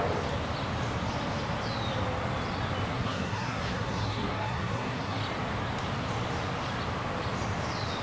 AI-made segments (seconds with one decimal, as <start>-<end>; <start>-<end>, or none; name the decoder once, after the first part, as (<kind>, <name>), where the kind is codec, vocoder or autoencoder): 2.9-5.2 (codec, SNAC)